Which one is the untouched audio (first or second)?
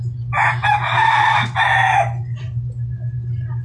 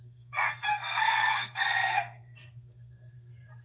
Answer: first